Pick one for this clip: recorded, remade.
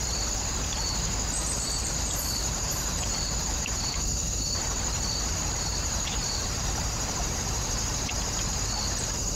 remade